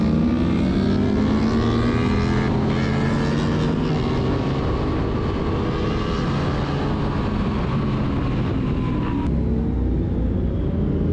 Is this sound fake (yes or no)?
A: no